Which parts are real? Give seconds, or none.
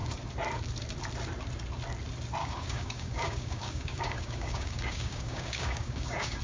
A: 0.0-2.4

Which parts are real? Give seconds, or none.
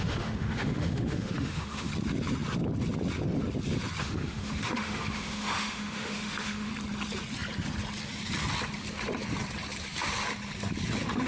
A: 1.9-4.0; 6.7-11.3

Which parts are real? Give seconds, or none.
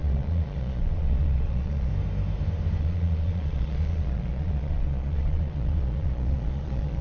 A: 1.9-2.8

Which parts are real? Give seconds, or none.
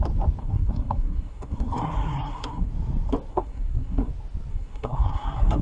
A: 0.0-0.4; 2.7-3.3; 4.1-4.5